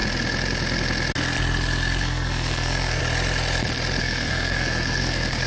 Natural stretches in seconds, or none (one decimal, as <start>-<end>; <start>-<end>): 0.0-2.0; 3.0-4.0